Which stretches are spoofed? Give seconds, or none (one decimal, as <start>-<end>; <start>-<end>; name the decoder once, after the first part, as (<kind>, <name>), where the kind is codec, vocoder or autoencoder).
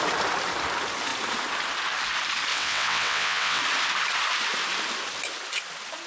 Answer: 2.5-3.6 (vocoder, WaveNeXt)